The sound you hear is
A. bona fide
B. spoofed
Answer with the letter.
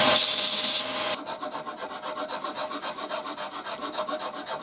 A